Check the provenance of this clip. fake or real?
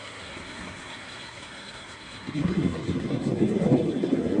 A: fake